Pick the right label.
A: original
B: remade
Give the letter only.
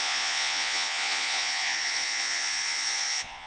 B